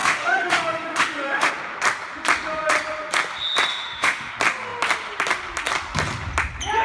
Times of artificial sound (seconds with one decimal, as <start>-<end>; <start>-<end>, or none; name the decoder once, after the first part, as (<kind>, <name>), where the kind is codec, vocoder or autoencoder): 0.0-1.5 (autoencoder, DAC-VAE); 3.7-4.3